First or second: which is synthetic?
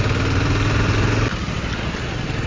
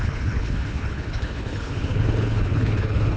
second